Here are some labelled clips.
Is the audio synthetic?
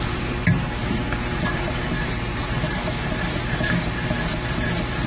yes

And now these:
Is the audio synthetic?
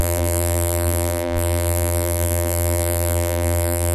yes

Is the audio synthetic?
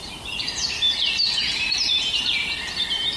yes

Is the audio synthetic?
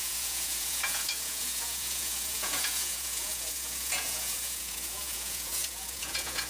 yes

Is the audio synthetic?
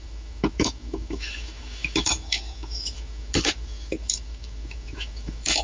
yes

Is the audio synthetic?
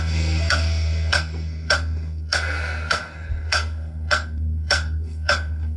yes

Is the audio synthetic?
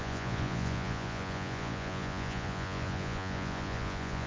yes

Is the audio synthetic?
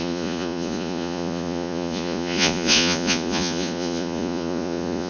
yes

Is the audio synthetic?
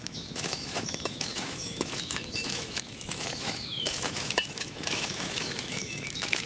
yes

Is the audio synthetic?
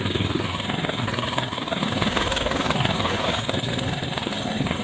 yes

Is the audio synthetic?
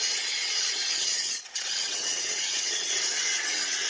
yes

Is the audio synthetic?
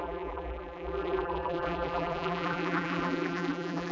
yes